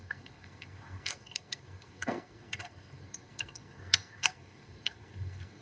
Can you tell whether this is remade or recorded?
remade